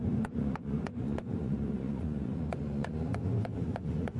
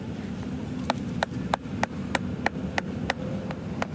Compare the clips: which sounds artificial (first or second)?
first